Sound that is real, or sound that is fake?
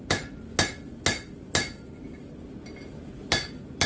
real